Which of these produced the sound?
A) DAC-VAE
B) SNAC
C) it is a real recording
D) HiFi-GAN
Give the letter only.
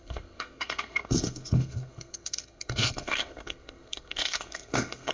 B